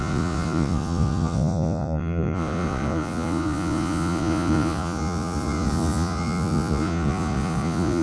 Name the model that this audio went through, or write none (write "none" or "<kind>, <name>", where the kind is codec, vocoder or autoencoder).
vocoder, Vocos